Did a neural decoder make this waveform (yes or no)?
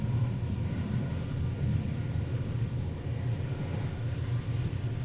yes